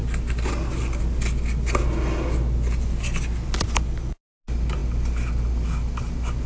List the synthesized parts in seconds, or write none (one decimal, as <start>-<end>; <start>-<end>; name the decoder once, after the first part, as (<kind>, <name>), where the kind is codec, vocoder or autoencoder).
none